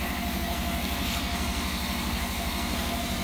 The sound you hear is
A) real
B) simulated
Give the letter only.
B